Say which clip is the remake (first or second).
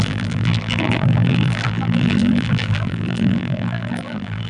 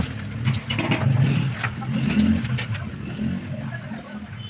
first